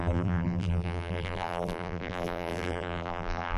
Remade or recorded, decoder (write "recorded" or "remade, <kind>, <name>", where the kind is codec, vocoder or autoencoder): remade, vocoder, BigVGAN v2